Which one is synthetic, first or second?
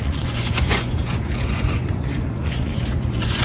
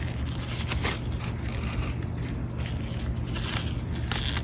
first